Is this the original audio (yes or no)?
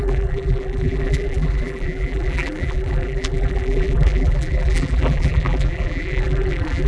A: no